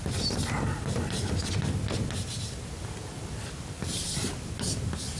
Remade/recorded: recorded